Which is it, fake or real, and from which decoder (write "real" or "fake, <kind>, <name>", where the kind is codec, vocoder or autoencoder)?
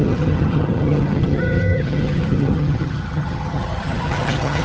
fake, vocoder, HiFi-GAN